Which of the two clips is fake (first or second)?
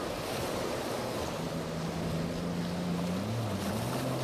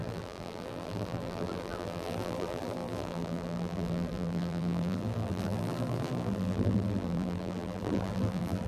second